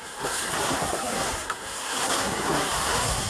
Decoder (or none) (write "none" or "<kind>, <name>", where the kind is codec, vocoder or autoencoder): codec, SNAC